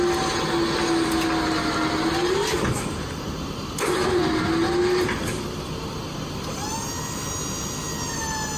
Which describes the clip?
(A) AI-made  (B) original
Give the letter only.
B